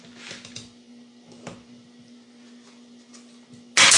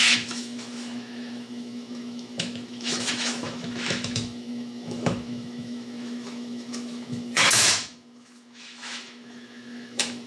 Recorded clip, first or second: first